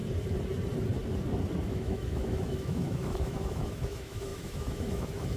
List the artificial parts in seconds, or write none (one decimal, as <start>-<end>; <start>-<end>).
1.6-5.4